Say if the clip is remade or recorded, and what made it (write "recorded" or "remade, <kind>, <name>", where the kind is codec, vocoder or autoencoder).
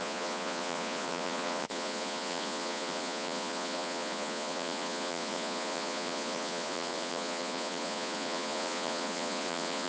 remade, vocoder, Vocos